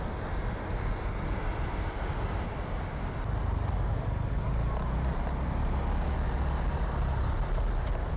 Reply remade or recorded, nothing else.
recorded